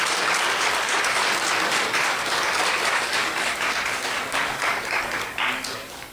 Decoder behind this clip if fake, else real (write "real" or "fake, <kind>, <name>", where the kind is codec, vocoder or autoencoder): fake, codec, DAC